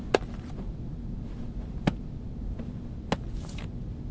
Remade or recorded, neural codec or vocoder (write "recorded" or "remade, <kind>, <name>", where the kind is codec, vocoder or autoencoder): recorded